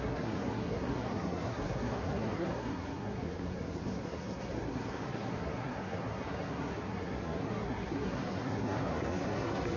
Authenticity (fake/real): fake